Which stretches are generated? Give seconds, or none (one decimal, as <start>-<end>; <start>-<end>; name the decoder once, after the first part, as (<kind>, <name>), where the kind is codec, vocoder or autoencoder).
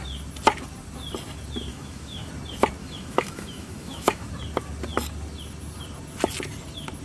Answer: 1.7-2.3 (autoencoder, DAC-VAE); 2.8-4.3